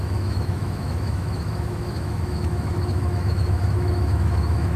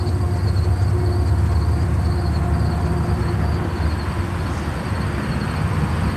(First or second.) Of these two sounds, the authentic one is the second